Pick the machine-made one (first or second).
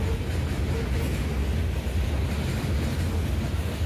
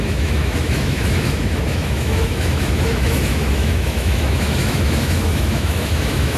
second